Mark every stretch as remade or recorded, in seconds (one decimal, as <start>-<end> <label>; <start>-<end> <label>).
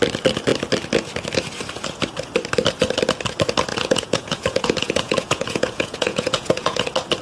0.0-3.7 recorded; 3.7-6.8 remade; 6.8-7.2 recorded